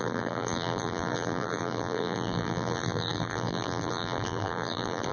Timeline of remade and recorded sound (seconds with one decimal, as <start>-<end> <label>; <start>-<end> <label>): 0.0-5.1 remade